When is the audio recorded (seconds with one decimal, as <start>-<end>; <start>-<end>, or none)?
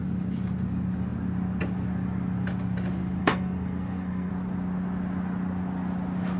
0.0-3.2; 4.3-6.4